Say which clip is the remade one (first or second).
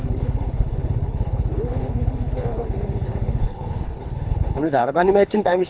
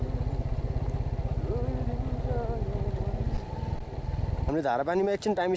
first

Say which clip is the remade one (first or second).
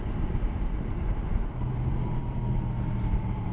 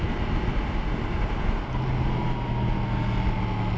first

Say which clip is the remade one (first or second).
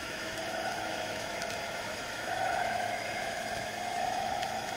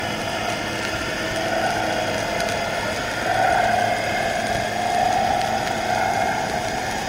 first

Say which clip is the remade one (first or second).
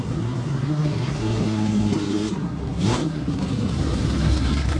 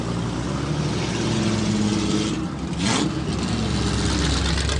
first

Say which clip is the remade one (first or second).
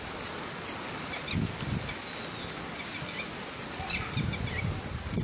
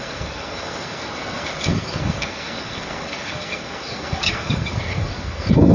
second